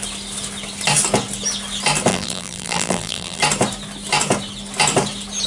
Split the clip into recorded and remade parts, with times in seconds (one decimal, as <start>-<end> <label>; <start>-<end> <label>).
0.0-2.1 recorded; 2.1-3.4 remade; 3.4-5.5 recorded